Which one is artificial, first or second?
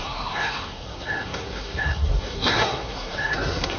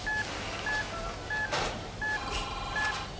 first